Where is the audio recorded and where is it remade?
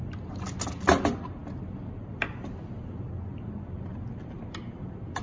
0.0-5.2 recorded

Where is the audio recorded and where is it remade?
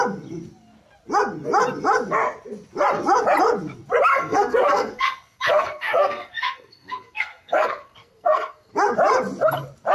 0.0-4.1 recorded; 4.1-8.7 remade; 8.7-9.9 recorded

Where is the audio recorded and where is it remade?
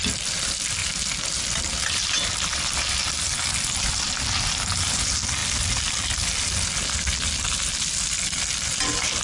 0.0-9.2 recorded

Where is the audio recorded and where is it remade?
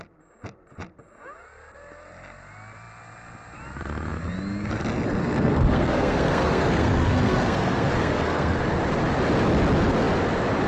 0.0-5.2 recorded; 5.2-8.6 remade; 8.6-10.7 recorded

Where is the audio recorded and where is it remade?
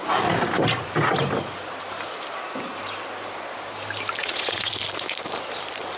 0.0-4.2 recorded; 4.2-4.7 remade; 4.7-6.0 recorded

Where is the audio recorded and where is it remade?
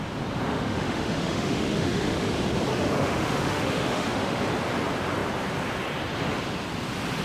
0.0-0.5 recorded; 0.5-2.3 remade; 2.3-2.7 recorded; 2.7-4.4 remade; 4.4-7.2 recorded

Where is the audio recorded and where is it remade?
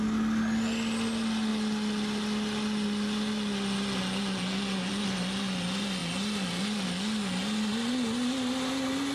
0.0-9.1 recorded